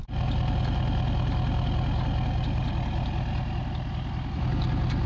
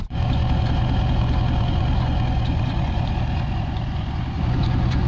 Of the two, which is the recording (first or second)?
first